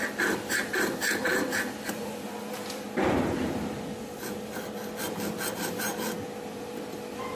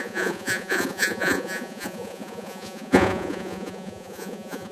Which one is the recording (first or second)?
first